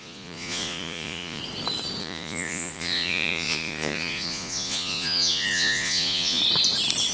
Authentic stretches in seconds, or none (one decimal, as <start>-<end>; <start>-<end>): 1.4-2.0; 6.4-7.1